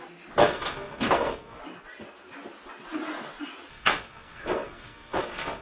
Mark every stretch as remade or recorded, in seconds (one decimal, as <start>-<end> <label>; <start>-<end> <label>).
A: 0.0-0.4 recorded; 0.4-1.6 remade; 1.6-3.7 recorded; 3.7-5.6 remade